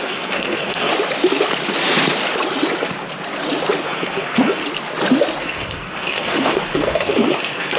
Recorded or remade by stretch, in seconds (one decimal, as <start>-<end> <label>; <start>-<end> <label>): 0.0-0.9 remade; 0.9-3.8 recorded; 3.8-4.6 remade; 4.6-5.4 recorded; 5.4-7.8 remade